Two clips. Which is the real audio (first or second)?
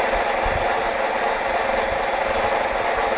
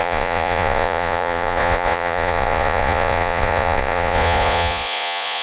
first